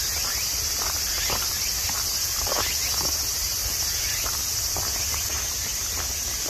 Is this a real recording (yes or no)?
yes